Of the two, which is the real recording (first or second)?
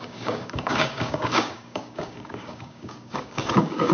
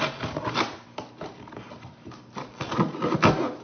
second